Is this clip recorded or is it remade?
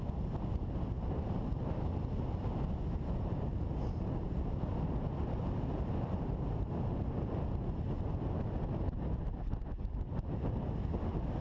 recorded